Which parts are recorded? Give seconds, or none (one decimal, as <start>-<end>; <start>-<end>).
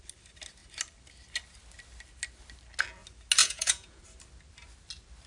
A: 0.0-3.4; 4.0-5.3